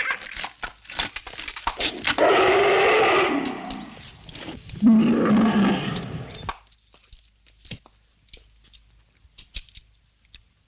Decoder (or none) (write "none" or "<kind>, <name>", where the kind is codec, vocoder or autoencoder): none